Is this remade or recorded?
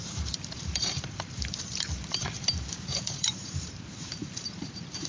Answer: remade